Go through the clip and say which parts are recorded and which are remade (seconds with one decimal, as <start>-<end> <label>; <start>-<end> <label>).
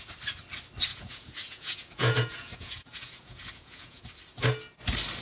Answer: 0.0-0.9 recorded; 0.9-4.0 remade; 4.0-5.2 recorded